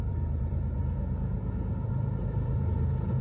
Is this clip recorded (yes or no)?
no